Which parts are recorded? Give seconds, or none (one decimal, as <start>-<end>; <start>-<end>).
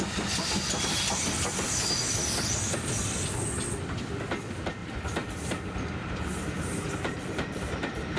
0.0-4.8